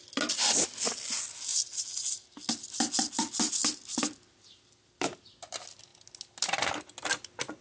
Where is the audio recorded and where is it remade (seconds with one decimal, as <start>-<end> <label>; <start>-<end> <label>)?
0.0-7.6 recorded